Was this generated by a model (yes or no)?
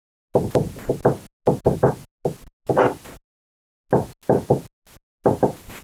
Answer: no